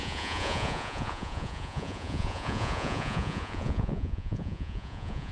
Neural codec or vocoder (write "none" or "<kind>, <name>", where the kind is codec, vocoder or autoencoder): vocoder, Vocos